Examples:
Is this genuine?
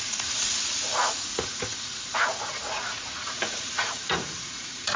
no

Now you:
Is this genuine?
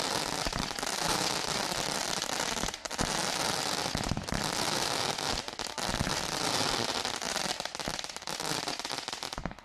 yes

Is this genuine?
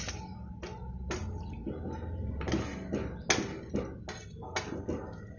yes